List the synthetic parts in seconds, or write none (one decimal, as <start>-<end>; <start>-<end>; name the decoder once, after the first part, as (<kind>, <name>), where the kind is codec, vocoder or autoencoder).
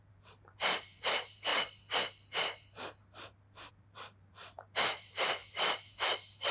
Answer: 0.0-1.5 (vocoder, BigVGAN v2); 3.7-5.4